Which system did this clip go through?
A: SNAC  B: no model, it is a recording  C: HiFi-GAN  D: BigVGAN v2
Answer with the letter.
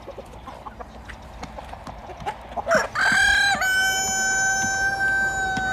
B